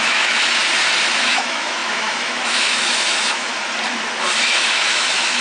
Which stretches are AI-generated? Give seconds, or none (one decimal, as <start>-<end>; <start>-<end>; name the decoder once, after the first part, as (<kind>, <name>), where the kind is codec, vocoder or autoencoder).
0.0-0.6 (autoencoder, DAC-VAE); 1.3-3.5; 4.5-5.4